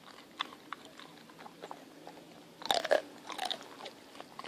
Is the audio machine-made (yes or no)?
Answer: no